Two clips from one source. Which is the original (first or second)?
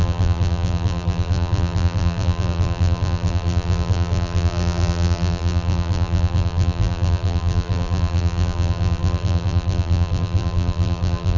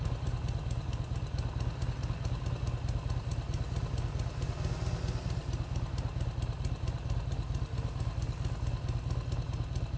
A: second